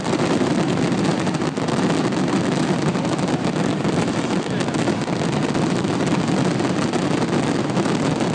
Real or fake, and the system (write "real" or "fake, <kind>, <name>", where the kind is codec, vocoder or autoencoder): real